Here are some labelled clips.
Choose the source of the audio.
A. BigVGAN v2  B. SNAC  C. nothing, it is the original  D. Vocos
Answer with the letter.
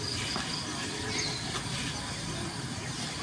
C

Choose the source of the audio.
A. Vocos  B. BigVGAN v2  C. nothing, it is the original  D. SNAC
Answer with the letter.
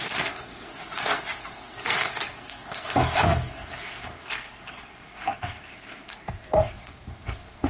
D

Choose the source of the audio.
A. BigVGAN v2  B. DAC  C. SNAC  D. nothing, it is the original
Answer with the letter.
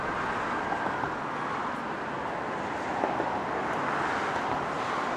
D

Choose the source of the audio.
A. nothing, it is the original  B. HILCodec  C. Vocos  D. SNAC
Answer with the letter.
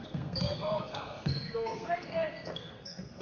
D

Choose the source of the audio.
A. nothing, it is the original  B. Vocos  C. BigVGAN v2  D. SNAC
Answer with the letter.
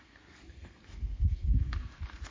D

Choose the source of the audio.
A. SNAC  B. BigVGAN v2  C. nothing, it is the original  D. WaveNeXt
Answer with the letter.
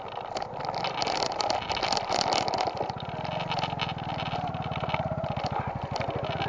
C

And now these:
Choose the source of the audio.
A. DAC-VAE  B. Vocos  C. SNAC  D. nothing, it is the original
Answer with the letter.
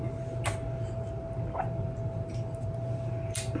D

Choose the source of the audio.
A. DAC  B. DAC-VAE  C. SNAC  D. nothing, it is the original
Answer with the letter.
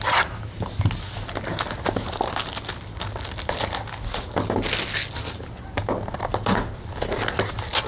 D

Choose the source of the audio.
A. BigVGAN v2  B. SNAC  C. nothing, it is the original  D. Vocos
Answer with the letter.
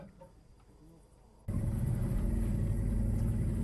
C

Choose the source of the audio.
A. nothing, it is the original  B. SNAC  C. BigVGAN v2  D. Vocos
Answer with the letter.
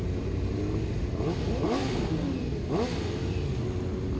A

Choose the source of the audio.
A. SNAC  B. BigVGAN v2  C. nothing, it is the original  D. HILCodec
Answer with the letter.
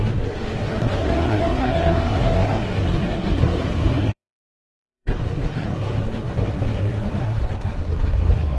A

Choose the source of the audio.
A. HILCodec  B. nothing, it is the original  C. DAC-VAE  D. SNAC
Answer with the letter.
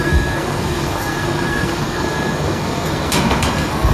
D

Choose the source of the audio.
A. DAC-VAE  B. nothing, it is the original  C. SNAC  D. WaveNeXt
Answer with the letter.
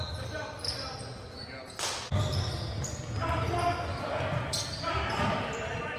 B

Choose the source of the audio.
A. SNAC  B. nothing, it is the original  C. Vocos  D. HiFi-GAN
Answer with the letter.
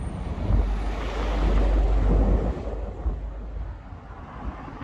B